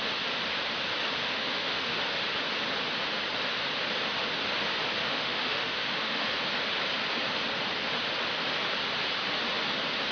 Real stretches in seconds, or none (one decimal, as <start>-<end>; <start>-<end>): 0.0-1.2; 2.0-5.0; 6.3-10.1